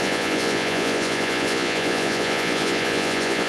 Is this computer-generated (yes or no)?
yes